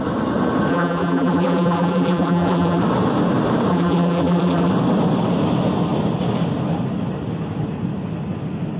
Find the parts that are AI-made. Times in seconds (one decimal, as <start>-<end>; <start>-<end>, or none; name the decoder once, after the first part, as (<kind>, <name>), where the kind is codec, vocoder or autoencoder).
0.7-2.8 (vocoder, BigVGAN v2); 3.7-4.7